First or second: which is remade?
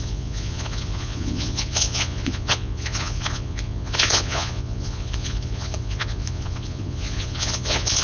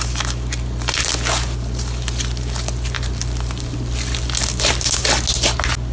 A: first